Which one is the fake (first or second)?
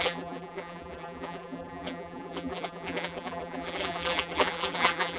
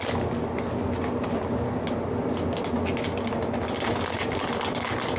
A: first